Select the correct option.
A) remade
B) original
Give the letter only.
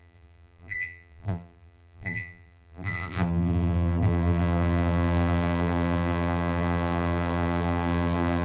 A